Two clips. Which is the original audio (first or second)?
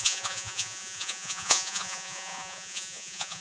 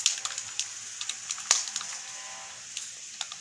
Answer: second